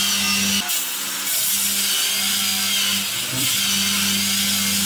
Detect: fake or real real